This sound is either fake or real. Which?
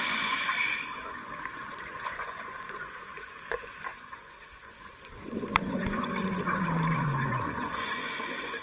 fake